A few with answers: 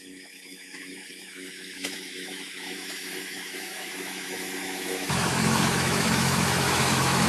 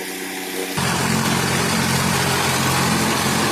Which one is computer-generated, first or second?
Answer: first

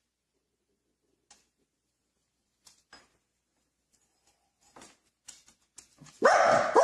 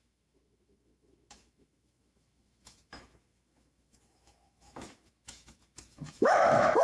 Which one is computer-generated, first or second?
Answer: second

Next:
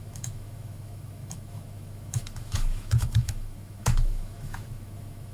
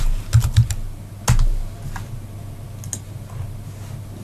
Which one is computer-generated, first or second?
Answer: first